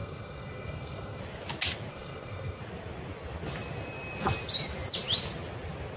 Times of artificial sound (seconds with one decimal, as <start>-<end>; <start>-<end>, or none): 0.0-1.2; 1.9-2.6